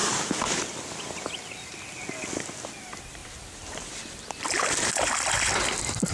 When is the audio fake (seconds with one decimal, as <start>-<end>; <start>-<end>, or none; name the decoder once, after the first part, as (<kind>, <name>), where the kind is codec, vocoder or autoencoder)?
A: 2.8-6.1 (vocoder, BigVGAN v2)